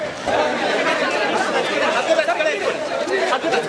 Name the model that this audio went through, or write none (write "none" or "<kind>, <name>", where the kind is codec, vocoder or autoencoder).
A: none